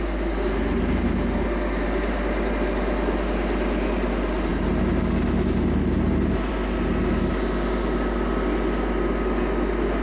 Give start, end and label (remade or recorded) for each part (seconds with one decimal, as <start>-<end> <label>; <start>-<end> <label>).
0.0-10.0 recorded